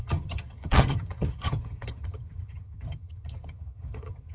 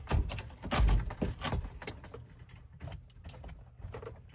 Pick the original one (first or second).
second